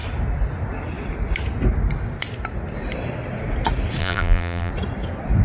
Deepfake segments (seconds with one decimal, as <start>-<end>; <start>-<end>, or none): 4.0-4.7